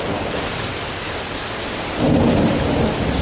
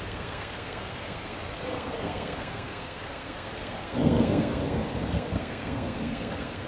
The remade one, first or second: second